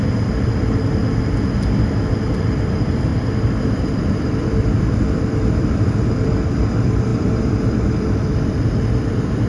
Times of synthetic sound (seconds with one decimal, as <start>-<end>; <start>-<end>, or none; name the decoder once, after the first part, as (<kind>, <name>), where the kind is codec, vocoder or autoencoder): 0.0-1.0 (vocoder, BigVGAN v2); 2.1-9.5